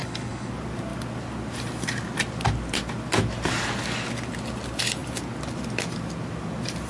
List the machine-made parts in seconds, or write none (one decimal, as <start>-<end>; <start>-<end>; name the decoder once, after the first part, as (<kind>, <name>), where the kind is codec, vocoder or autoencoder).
0.0-0.5 (codec, HILCodec)